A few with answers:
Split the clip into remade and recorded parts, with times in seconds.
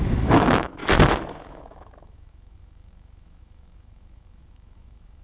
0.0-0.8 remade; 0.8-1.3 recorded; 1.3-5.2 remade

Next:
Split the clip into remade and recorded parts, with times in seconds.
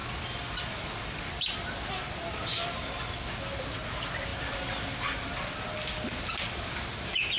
0.0-7.4 recorded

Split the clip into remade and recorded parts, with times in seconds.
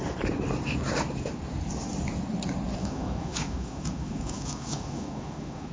0.0-2.8 recorded; 2.8-5.7 remade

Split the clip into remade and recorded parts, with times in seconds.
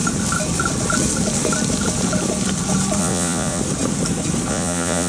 0.0-3.0 recorded; 3.0-3.6 remade; 3.6-4.5 recorded; 4.5-5.1 remade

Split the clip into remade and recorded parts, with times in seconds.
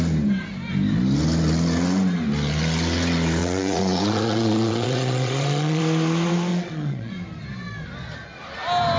0.0-3.4 recorded; 3.4-5.8 remade; 5.8-6.5 recorded; 6.5-7.1 remade; 7.1-9.0 recorded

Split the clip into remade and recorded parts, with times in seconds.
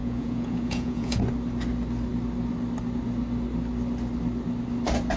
0.0-1.2 remade; 1.2-5.2 recorded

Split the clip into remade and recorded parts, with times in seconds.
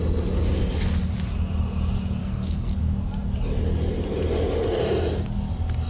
0.0-2.2 recorded; 2.2-2.8 remade; 2.8-5.9 recorded